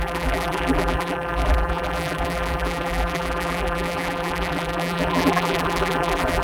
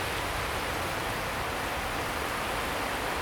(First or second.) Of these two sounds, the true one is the second